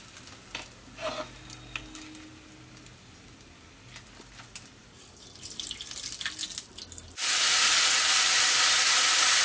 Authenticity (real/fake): real